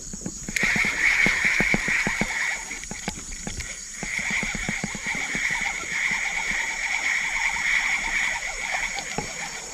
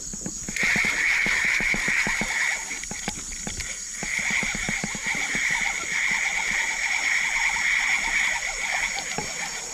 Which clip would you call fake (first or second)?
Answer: first